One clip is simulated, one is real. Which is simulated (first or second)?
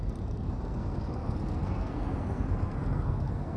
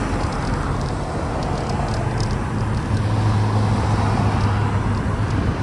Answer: first